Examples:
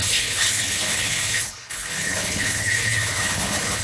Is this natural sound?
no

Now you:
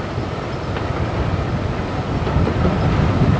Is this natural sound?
yes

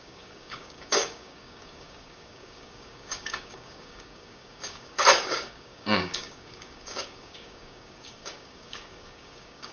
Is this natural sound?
no